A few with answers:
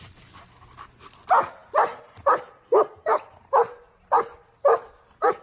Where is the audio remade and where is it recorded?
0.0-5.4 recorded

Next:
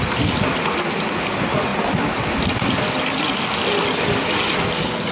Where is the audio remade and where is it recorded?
0.0-5.1 recorded

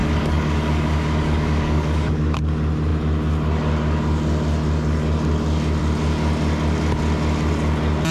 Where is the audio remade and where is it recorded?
0.0-2.2 remade; 2.2-8.1 recorded

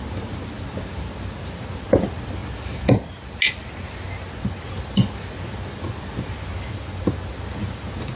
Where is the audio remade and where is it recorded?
0.0-8.2 recorded

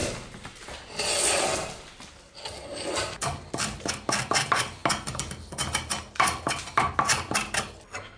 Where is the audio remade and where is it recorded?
0.0-8.2 recorded

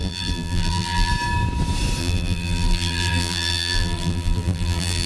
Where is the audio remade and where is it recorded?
0.0-1.1 remade; 1.1-2.0 recorded; 2.0-5.1 remade